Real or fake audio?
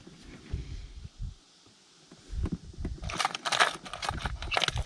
real